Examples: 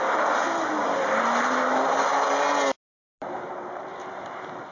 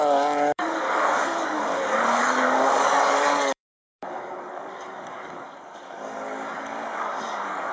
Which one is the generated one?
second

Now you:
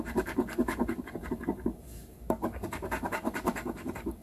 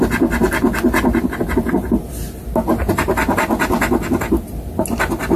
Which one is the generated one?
first